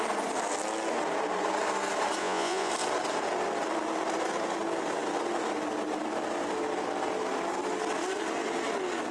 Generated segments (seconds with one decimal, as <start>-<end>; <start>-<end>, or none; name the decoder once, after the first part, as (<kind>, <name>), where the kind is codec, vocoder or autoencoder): 2.2-2.7 (vocoder, Vocos)

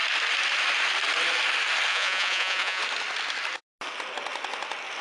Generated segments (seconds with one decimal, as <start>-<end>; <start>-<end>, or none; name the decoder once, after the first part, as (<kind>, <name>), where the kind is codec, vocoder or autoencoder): 1.9-2.8 (vocoder, Vocos)

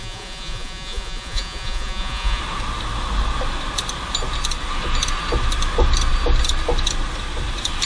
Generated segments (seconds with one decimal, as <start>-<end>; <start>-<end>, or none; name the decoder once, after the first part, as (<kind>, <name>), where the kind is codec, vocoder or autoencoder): 0.0-2.4 (vocoder, Vocos)

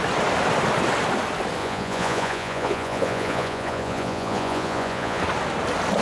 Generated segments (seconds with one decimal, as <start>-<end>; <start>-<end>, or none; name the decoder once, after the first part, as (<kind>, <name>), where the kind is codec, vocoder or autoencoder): 1.6-5.2 (vocoder, Vocos)

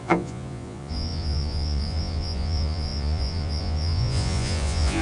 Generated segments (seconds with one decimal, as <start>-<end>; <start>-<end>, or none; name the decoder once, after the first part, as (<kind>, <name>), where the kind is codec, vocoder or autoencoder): 0.0-5.0 (vocoder, Vocos)

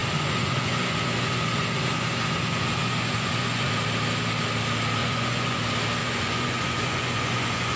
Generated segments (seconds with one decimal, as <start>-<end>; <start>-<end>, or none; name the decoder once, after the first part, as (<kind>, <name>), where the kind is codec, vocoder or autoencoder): 0.0-3.7 (vocoder, Vocos); 5.0-5.6; 6.0-7.8